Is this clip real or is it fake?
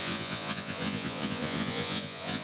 fake